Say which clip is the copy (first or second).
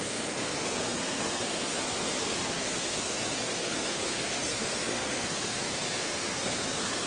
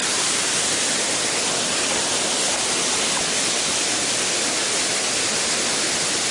first